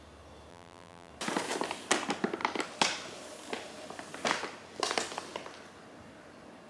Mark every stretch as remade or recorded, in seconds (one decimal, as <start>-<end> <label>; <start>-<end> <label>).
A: 0.0-0.5 recorded; 0.5-1.1 remade; 1.1-6.7 recorded